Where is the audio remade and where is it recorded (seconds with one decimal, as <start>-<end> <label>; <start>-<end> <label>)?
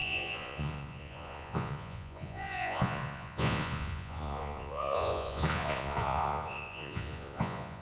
0.0-7.8 remade